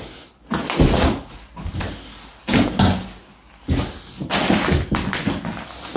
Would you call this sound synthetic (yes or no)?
no